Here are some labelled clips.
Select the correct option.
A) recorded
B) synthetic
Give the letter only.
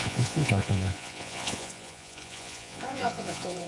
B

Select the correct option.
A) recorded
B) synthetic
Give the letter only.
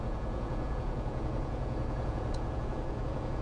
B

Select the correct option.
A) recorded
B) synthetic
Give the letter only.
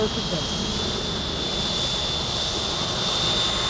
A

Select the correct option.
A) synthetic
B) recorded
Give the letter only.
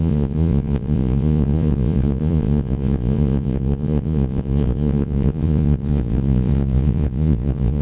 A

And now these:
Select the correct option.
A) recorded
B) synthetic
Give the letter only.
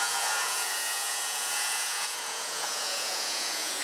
B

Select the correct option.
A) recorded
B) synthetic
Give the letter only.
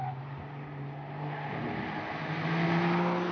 A